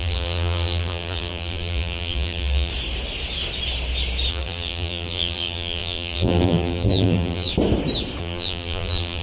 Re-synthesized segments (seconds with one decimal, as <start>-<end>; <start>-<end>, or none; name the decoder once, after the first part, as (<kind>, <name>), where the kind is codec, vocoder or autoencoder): 0.0-2.7 (vocoder, BigVGAN v2); 4.3-7.5; 8.2-9.2